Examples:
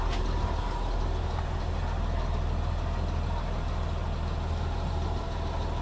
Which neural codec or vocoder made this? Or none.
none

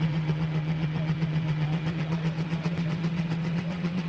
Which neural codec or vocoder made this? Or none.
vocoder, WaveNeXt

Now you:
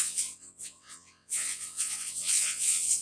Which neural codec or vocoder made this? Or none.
vocoder, WaveNeXt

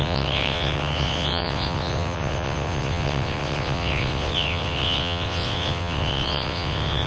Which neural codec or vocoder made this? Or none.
vocoder, WaveNeXt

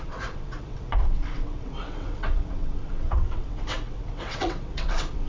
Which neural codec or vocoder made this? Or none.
vocoder, WaveNeXt